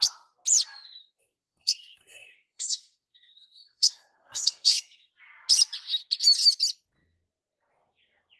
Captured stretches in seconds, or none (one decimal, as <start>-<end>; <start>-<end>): 0.0-1.0; 5.1-8.4